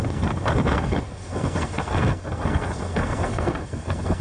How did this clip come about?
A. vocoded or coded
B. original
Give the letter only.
A